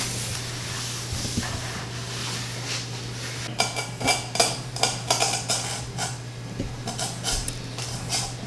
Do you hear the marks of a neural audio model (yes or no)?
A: no